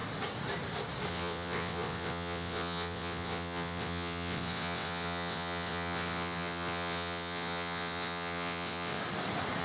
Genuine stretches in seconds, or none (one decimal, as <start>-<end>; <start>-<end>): 0.0-1.1; 9.0-9.6